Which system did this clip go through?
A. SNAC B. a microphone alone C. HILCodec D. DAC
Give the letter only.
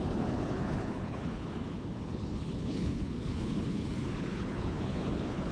C